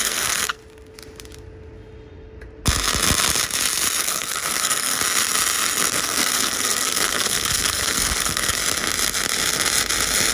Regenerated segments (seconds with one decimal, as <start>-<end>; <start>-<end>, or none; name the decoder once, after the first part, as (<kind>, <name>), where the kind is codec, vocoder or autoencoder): 0.0-0.6 (codec, SNAC); 4.0-5.0; 5.9-8.6